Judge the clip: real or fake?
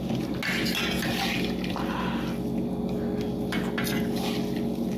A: real